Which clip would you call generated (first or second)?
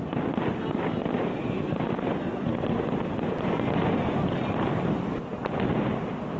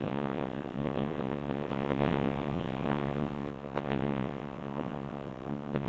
second